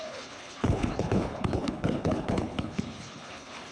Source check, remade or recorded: remade